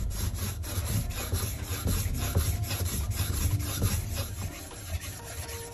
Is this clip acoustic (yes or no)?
no